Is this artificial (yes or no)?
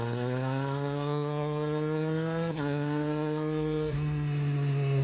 yes